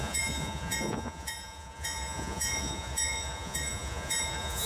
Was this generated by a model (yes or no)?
yes